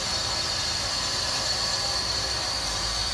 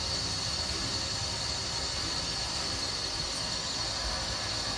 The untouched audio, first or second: second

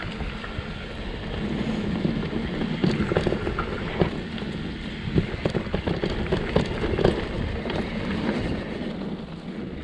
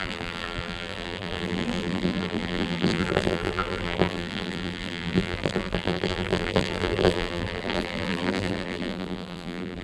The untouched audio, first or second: first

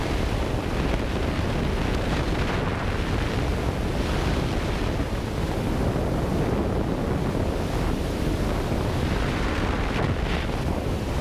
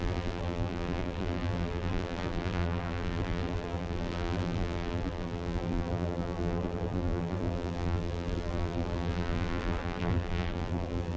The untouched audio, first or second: first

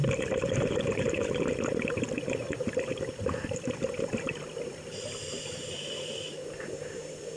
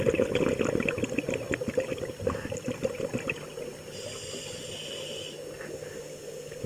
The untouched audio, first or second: second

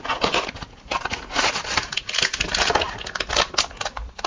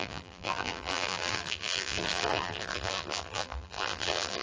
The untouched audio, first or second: first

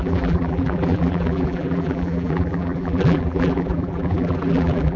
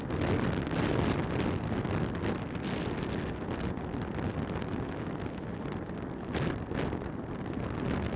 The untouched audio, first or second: second